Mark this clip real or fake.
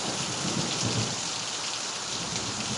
real